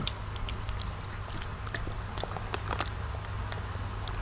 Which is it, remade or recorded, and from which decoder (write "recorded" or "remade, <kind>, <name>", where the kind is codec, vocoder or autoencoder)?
recorded